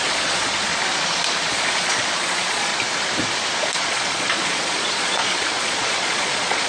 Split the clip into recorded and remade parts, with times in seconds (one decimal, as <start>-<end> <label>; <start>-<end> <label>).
0.0-0.7 remade; 0.7-1.5 recorded; 1.5-2.7 remade; 2.7-3.8 recorded; 3.8-6.7 remade